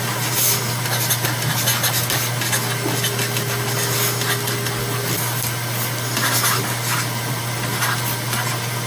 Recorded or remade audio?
recorded